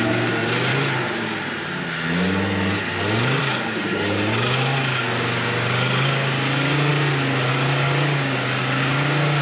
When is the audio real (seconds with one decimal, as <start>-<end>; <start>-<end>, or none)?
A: 0.7-3.4; 6.9-7.5